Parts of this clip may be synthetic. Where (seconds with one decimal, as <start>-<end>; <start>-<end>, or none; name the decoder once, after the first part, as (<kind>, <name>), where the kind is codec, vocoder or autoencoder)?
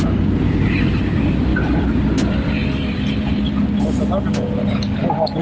none